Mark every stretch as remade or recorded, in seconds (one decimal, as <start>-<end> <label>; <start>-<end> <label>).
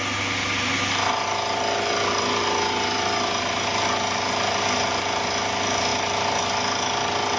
0.0-7.4 recorded